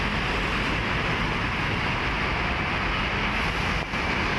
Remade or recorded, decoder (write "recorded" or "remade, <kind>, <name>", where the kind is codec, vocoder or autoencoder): recorded